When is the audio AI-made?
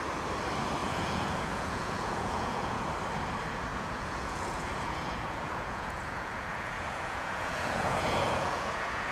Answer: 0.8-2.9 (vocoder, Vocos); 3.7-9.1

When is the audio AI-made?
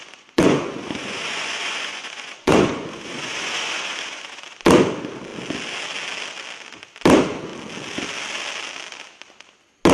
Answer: 0.0-4.6 (vocoder, Vocos)